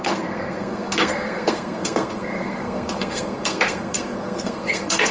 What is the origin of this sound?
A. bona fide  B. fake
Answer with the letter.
B